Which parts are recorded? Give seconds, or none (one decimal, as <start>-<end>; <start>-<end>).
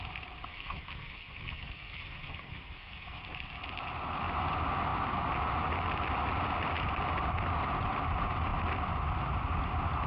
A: 0.0-0.5; 3.2-10.1